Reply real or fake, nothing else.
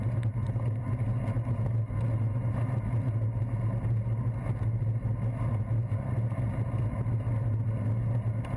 real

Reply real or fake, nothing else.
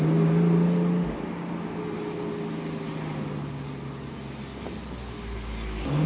real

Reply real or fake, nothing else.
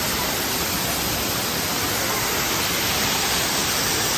fake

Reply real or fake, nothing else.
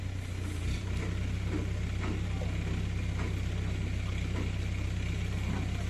real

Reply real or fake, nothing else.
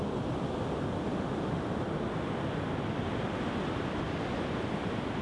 fake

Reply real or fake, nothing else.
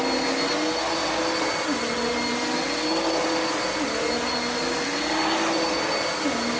real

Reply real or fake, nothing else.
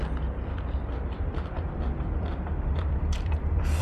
fake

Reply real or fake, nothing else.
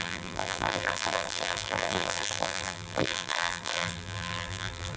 fake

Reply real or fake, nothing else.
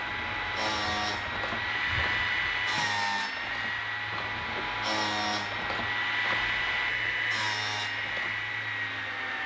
real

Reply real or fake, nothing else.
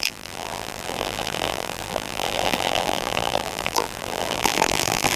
fake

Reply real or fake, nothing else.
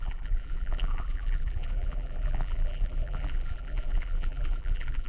fake